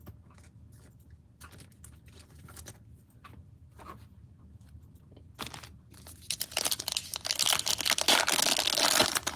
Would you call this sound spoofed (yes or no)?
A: no